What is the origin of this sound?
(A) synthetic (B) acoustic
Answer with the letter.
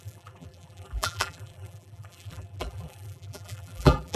A